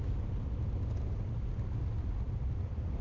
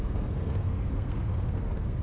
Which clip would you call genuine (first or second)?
first